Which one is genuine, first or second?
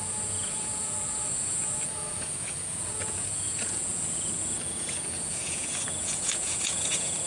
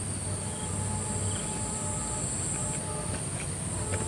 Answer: second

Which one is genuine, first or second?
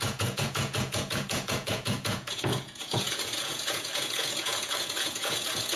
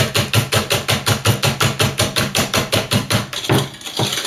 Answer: second